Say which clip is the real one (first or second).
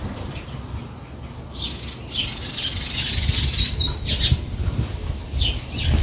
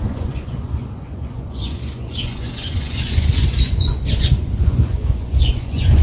first